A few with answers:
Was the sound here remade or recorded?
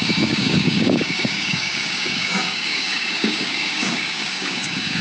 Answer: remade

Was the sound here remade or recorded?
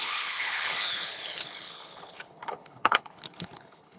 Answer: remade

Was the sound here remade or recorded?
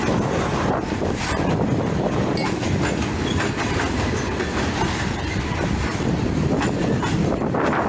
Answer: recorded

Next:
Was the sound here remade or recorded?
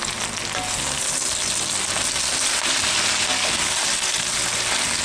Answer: recorded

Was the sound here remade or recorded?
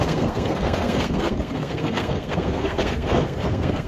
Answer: remade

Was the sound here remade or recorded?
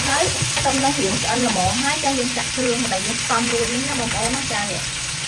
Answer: remade